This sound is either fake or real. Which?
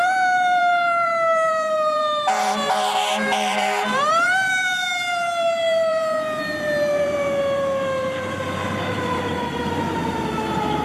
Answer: fake